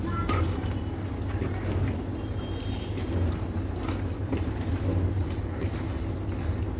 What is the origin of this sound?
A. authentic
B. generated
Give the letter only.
A